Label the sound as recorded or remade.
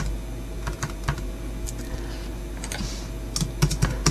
recorded